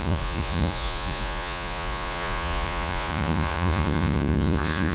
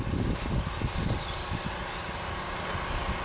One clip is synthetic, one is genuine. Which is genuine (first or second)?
second